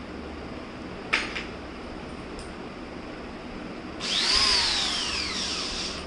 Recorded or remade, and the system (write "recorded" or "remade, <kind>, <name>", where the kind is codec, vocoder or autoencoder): recorded